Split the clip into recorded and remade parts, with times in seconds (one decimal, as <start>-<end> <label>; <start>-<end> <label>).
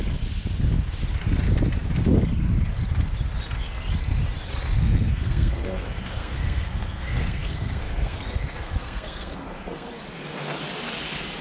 0.0-4.8 recorded; 4.8-9.9 remade; 9.9-11.4 recorded